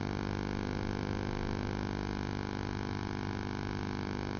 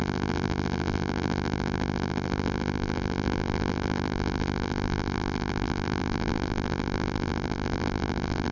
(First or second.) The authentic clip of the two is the first